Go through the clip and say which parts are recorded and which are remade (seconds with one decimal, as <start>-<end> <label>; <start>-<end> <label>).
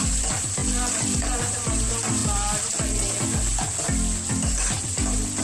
0.0-0.6 remade; 0.6-1.2 recorded; 1.2-2.2 remade; 2.2-5.4 recorded